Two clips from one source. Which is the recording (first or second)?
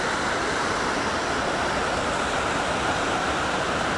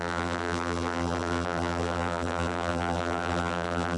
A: first